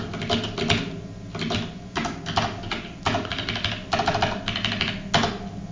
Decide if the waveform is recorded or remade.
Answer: recorded